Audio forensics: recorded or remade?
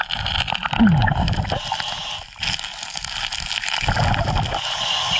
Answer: recorded